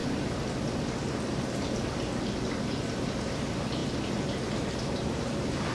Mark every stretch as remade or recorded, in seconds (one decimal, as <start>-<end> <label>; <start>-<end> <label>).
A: 0.0-5.7 recorded